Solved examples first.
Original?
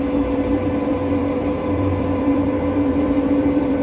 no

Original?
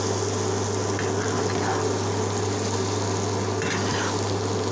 yes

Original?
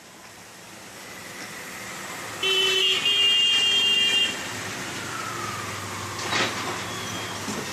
yes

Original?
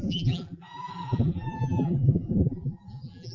no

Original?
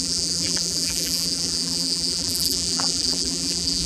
no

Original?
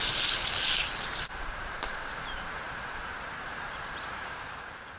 no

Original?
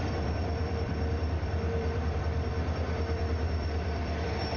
no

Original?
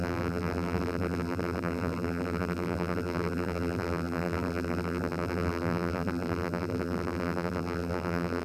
no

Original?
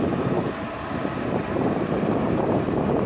no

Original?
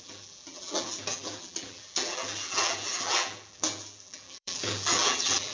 no